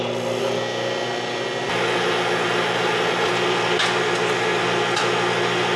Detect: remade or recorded recorded